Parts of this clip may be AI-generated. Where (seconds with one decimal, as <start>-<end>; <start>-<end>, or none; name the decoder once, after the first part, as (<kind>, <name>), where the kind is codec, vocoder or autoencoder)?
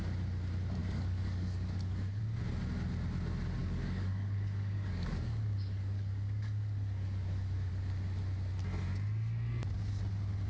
0.8-2.2 (codec, DAC); 3.6-7.7